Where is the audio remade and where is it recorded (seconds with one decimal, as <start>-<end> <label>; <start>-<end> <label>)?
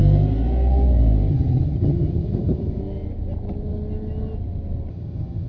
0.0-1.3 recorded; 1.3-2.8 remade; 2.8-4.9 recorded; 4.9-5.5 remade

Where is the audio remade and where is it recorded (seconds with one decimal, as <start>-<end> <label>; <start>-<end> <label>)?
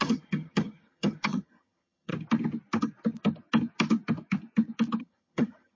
0.0-2.1 remade; 2.1-5.0 recorded; 5.0-5.8 remade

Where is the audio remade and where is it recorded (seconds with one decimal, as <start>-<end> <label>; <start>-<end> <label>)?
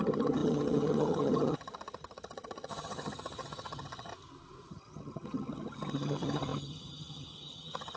0.0-4.1 remade; 4.1-4.7 recorded; 4.7-8.0 remade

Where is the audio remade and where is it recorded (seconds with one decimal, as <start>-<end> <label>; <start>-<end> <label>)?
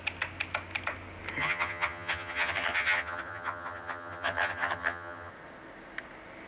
0.0-1.4 recorded; 1.4-5.3 remade; 5.3-6.5 recorded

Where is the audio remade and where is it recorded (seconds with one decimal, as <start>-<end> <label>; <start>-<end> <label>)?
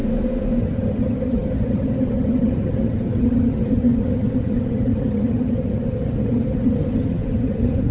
0.0-0.6 recorded; 0.6-7.9 remade